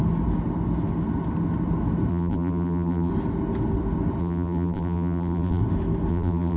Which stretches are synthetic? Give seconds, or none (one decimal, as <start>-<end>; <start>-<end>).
2.1-3.1; 4.2-5.6; 6.1-6.6